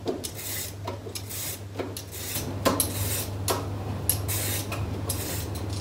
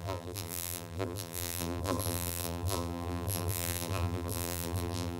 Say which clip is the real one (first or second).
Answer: first